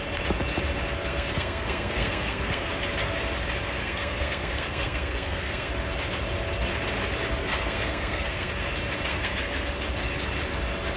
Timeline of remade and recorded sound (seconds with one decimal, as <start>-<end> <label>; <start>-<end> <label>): 0.0-1.1 recorded; 1.1-2.7 remade; 2.7-3.8 recorded; 3.8-5.7 remade; 5.7-7.4 recorded; 7.4-8.5 remade; 8.5-9.1 recorded; 9.1-9.7 remade; 9.7-11.0 recorded